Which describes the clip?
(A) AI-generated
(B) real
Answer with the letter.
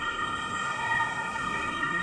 A